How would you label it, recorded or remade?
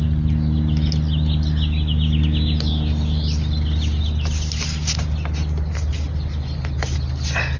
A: recorded